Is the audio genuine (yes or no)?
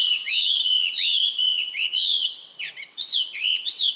no